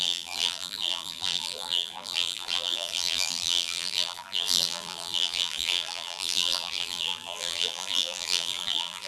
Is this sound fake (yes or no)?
yes